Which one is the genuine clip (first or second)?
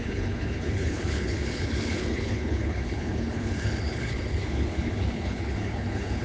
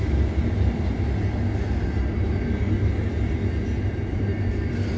second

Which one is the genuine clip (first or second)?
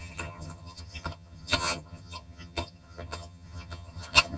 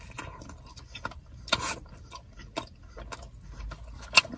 second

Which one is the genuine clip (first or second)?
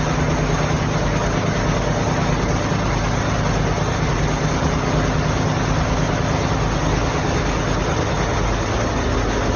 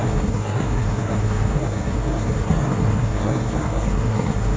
first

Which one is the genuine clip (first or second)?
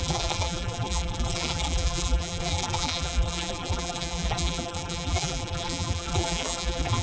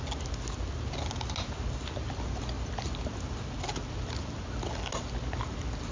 second